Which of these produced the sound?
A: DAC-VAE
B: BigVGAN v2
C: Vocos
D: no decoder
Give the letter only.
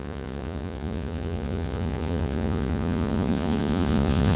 C